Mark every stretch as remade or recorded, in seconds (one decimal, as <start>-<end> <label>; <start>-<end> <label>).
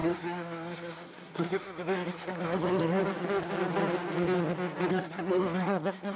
0.0-3.0 remade; 3.0-4.9 recorded; 4.9-6.2 remade